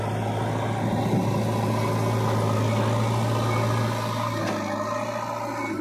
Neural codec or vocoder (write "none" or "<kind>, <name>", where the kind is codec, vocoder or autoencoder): none